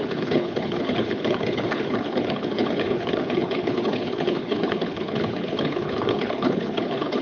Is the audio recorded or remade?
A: remade